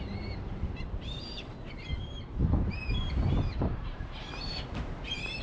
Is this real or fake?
fake